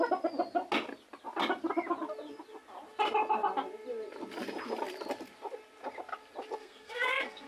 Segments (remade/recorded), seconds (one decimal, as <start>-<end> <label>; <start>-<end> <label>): 0.0-6.6 recorded; 6.6-7.5 remade